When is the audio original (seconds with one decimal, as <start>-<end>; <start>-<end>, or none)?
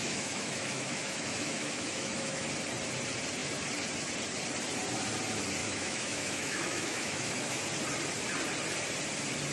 2.4-5.6; 7.6-9.5